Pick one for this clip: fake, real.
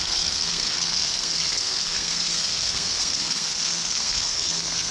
fake